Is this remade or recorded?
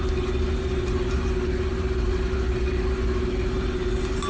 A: recorded